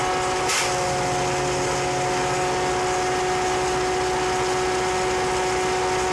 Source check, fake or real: real